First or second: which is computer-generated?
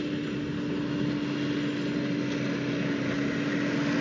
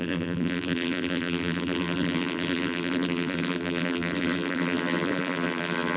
second